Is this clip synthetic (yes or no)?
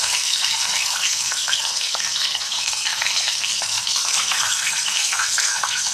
yes